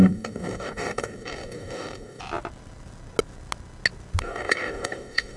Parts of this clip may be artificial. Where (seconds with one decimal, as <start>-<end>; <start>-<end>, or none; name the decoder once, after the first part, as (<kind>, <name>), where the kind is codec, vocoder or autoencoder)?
0.0-2.2 (codec, DAC); 4.2-5.4